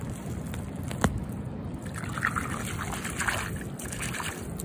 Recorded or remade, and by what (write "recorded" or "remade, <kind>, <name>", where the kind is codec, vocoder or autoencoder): recorded